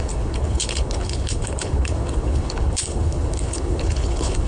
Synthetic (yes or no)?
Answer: yes